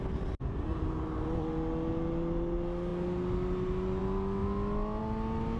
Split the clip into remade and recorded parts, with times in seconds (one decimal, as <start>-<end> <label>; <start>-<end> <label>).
0.0-5.6 recorded

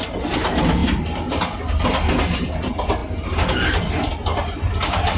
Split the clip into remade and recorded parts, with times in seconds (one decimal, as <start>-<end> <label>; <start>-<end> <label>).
0.0-5.2 recorded

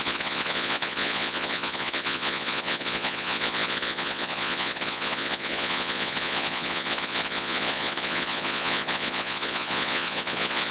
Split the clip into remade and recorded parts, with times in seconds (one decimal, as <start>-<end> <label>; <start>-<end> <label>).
0.0-10.7 remade

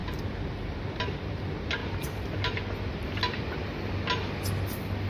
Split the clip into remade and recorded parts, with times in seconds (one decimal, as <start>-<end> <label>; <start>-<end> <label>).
0.0-5.1 recorded

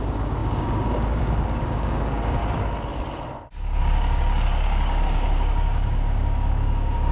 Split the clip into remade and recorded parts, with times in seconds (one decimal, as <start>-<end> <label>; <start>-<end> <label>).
0.0-2.4 remade; 2.4-3.8 recorded; 3.8-7.1 remade

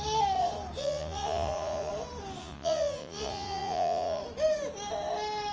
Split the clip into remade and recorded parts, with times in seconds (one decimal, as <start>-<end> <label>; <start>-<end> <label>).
0.0-0.8 recorded; 0.8-1.9 remade; 1.9-2.4 recorded; 2.4-4.2 remade; 4.2-5.5 recorded

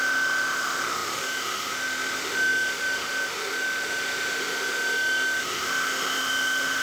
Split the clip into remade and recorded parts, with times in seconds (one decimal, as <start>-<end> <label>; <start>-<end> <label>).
0.0-6.8 remade

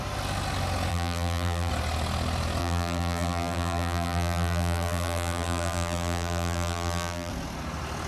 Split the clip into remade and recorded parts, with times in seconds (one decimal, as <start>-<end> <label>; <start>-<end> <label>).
0.0-0.9 recorded; 0.9-1.7 remade; 1.7-2.6 recorded; 2.6-7.3 remade; 7.3-8.1 recorded